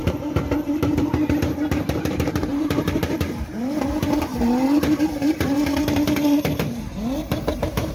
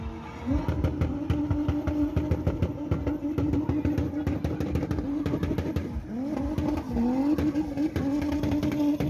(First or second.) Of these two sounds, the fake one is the first